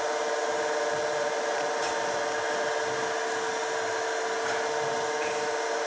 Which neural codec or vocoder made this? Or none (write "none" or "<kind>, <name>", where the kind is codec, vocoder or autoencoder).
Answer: none